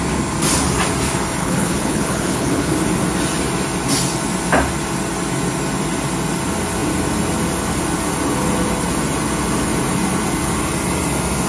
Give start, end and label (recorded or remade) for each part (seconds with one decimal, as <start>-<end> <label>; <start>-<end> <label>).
0.0-1.4 recorded; 1.4-2.7 remade; 2.7-11.5 recorded